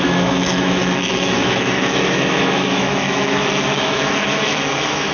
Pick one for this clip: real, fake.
fake